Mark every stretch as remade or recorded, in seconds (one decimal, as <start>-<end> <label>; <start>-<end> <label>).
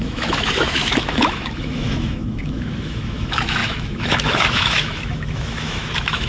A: 0.0-6.3 remade